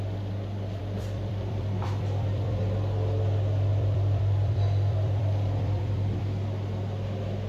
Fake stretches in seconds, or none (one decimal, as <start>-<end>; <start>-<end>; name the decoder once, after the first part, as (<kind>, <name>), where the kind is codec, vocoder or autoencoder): 0.8-2.7 (vocoder, BigVGAN v2); 3.7-6.2